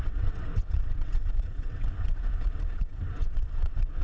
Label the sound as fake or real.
fake